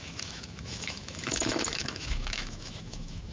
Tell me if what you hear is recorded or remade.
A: remade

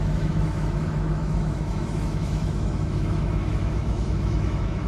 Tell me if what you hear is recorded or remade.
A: remade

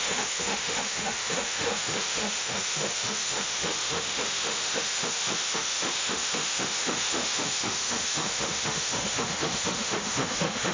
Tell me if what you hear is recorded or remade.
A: remade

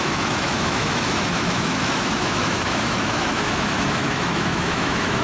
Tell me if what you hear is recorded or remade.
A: remade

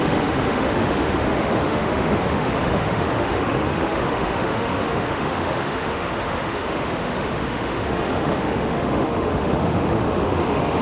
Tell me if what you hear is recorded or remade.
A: remade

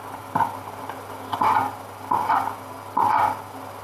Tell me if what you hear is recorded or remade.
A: recorded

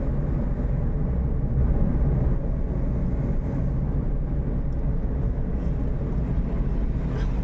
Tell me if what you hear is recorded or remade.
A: recorded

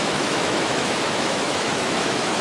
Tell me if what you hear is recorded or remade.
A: remade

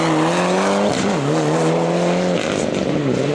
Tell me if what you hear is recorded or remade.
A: recorded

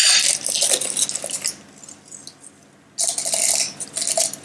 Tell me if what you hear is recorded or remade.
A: recorded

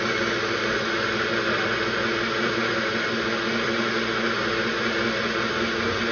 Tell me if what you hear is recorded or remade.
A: recorded